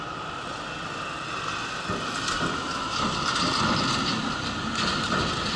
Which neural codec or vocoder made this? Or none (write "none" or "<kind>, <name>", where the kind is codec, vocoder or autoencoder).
none